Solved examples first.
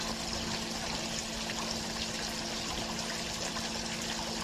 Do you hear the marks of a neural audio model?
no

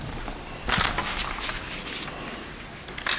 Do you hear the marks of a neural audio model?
no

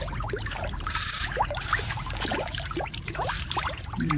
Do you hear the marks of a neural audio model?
yes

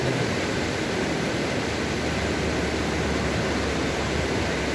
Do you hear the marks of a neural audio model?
no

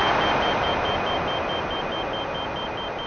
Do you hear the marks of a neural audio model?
no